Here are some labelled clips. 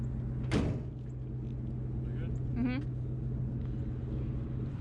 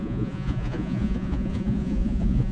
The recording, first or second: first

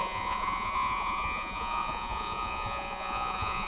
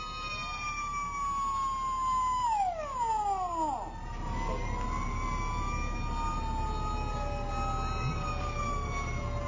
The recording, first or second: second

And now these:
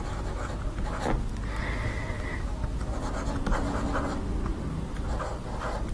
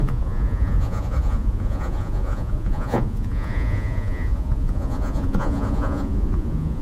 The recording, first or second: first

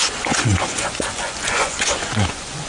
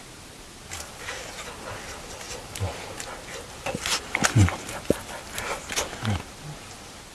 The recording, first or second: second